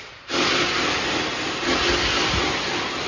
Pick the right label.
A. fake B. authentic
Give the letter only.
B